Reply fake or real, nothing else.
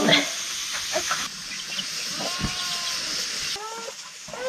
real